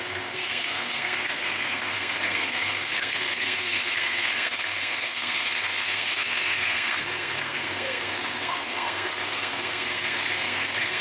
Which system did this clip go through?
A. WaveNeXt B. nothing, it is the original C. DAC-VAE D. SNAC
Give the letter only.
D